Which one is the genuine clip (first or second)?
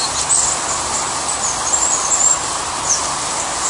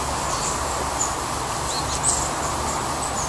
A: second